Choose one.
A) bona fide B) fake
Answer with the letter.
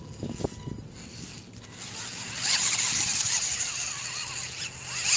A